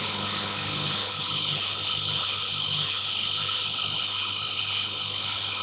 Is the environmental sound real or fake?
fake